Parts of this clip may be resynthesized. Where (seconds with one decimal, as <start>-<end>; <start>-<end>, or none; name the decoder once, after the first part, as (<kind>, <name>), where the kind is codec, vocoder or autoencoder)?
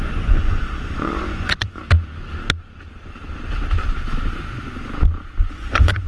0.0-1.8 (vocoder, Vocos); 5.5-6.1